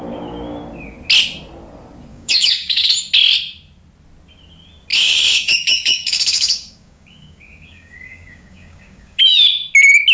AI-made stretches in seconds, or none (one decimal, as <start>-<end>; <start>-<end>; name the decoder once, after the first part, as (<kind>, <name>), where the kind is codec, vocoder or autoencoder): 2.1-2.9 (codec, DAC); 4.9-9.2